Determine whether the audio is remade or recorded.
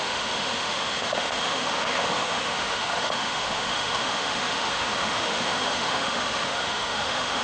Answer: remade